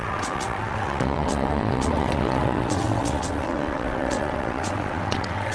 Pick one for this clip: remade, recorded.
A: remade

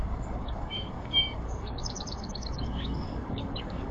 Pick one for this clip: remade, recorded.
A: remade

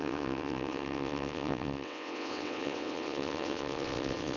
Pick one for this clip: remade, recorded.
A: remade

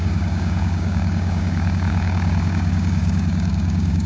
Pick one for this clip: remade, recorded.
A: remade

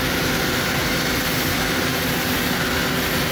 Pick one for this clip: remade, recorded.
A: recorded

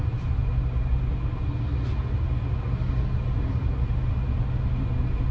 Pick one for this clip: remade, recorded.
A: recorded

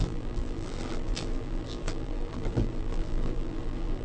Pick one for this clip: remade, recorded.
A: remade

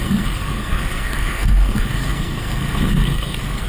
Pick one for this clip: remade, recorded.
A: remade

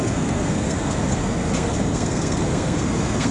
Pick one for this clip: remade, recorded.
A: remade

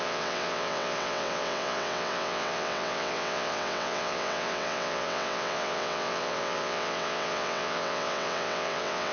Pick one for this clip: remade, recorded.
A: remade